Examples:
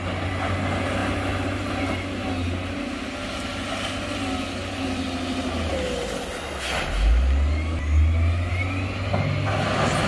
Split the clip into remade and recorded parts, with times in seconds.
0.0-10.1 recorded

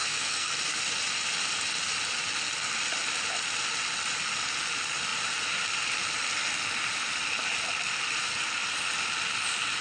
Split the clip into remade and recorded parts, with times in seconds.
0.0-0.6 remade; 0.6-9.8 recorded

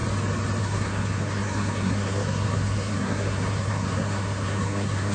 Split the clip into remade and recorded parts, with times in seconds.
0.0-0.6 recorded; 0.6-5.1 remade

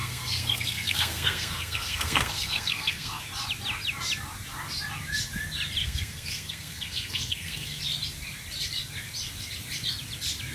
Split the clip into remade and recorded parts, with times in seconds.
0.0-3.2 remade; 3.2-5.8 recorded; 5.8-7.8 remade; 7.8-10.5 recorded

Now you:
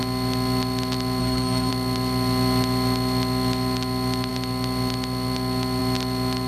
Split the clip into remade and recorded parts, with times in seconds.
0.0-1.2 recorded; 1.2-1.7 remade; 1.7-6.5 recorded

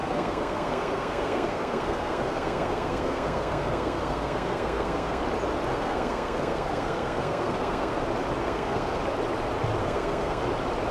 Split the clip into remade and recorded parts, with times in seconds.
0.0-5.2 remade; 5.2-5.7 recorded; 5.7-8.0 remade; 8.0-8.4 recorded; 8.4-9.0 remade; 9.0-9.8 recorded; 9.8-10.4 remade; 10.4-10.9 recorded

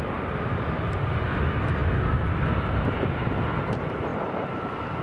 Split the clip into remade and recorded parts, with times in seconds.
0.0-5.0 recorded